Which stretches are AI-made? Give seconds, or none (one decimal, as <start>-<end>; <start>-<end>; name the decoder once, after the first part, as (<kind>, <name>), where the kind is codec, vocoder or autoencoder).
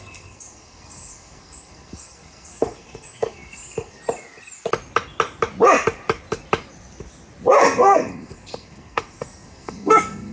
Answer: 0.0-4.0 (codec, SNAC); 7.6-10.3